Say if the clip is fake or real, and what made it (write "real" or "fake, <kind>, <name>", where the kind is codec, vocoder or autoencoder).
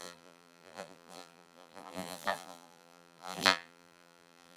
fake, vocoder, BigVGAN v2